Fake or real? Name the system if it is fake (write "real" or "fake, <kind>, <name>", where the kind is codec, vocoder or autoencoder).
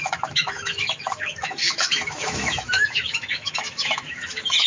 fake, autoencoder, DAC-VAE